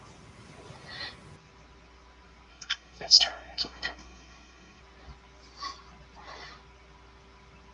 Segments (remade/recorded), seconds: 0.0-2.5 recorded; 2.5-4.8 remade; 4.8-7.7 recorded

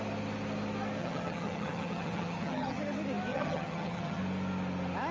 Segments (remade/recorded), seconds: 0.0-1.0 recorded; 1.0-2.8 remade; 2.8-3.3 recorded; 3.3-4.2 remade; 4.2-5.1 recorded

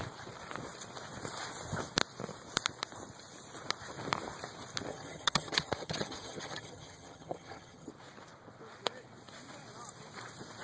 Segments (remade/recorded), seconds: 0.0-4.9 recorded; 4.9-7.9 remade; 7.9-10.6 recorded

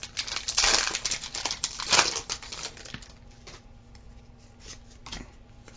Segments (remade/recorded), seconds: 0.0-5.8 recorded

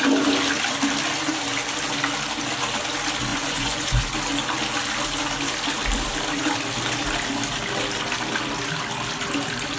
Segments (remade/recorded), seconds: 0.0-3.3 recorded; 3.3-4.0 remade; 4.0-9.8 recorded

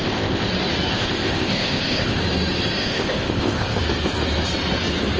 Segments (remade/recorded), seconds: 0.0-0.5 remade; 0.5-0.9 recorded; 0.9-2.2 remade; 2.2-2.8 recorded; 2.8-3.8 remade; 3.8-5.2 recorded